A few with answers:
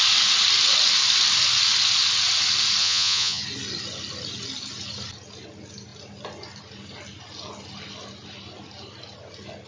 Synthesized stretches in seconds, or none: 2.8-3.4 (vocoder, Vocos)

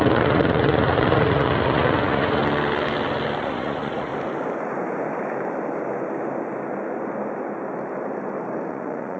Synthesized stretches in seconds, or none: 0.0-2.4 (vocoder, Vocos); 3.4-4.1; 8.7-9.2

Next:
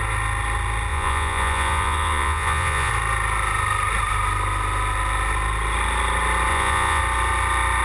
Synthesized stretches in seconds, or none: 0.9-2.9 (vocoder, Vocos); 6.5-7.0